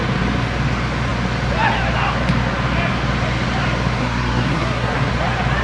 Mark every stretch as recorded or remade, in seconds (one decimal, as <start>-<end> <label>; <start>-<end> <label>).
0.0-4.0 recorded; 4.0-5.1 remade; 5.1-5.6 recorded